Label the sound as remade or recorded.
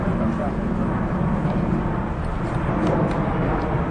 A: recorded